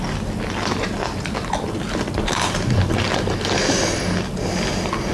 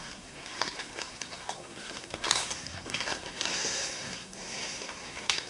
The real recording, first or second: first